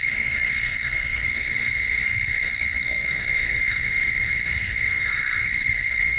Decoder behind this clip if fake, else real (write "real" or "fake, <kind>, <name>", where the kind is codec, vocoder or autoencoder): fake, codec, SNAC